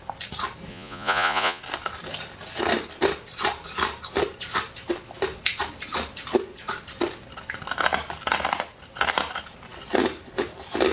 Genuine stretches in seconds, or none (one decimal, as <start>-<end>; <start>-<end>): 0.0-0.7; 1.6-10.9

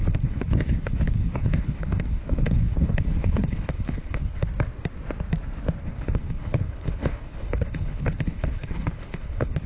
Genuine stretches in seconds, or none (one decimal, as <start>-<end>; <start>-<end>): 4.4-5.8

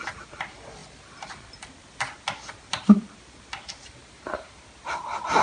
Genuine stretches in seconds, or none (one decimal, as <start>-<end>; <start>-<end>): 0.0-4.0; 4.8-5.4

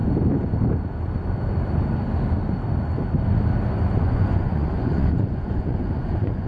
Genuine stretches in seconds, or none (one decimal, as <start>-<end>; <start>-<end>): 0.0-4.0

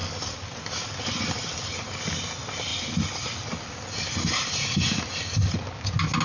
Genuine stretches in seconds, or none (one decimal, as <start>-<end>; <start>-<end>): 0.0-6.2

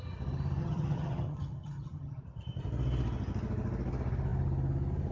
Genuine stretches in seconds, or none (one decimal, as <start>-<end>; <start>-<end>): 0.0-0.6; 2.2-5.1

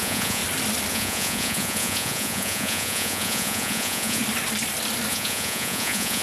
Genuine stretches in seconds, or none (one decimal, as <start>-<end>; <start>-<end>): 0.4-0.9; 4.2-5.1